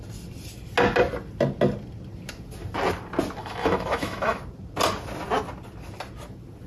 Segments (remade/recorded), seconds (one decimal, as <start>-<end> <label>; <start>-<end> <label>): 0.0-3.4 recorded; 3.4-4.4 remade; 4.4-6.7 recorded